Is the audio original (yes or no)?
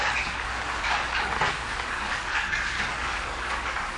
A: no